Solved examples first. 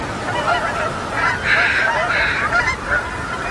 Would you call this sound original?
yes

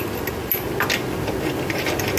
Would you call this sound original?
yes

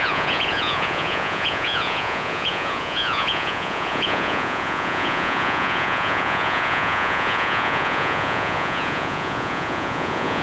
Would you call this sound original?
no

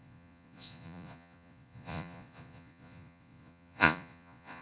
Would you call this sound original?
no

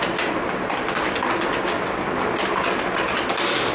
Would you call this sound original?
yes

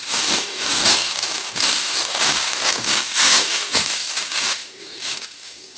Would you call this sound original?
no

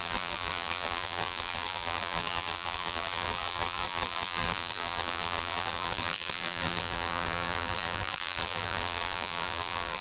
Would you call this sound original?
no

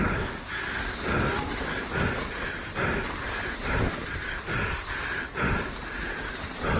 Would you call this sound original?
yes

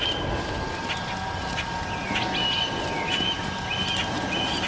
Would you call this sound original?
yes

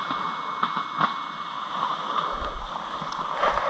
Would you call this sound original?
yes